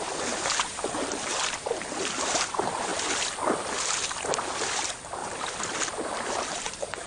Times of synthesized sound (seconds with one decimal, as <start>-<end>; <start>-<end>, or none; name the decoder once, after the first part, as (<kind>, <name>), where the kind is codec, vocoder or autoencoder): 0.0-2.9 (vocoder, BigVGAN v2); 4.7-5.2; 6.5-7.1